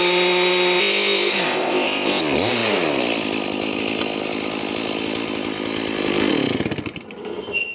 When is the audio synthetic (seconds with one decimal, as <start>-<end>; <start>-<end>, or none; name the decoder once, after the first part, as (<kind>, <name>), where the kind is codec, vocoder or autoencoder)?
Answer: 0.8-2.2 (codec, ZipCodec)